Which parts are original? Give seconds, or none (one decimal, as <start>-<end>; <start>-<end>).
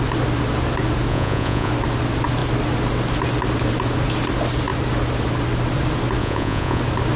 0.0-1.1; 1.7-6.2; 6.8-7.2